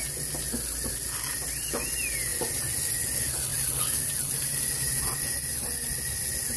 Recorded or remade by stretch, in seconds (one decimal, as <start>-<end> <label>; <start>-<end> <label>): 0.0-6.6 recorded